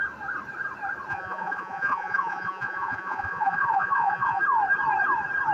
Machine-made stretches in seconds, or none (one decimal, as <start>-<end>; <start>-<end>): 1.1-4.4